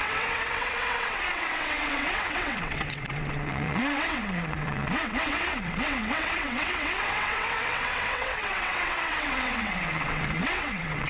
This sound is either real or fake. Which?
fake